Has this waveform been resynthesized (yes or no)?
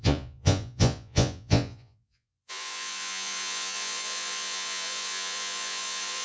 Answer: yes